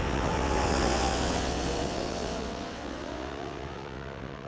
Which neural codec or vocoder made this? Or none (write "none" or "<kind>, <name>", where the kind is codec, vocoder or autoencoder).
vocoder, WaveNeXt